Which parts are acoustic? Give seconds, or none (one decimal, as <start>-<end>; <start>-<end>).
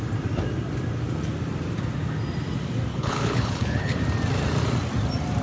0.0-2.9; 4.0-5.4